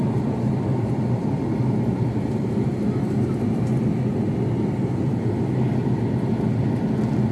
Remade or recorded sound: recorded